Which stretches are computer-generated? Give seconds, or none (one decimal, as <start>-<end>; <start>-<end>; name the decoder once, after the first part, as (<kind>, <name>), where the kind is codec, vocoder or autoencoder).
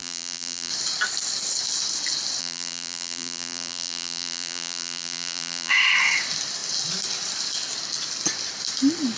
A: 0.0-0.7 (vocoder, BigVGAN v2); 2.4-5.7